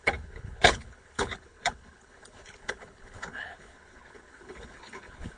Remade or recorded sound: remade